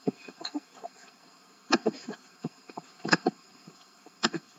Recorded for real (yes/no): no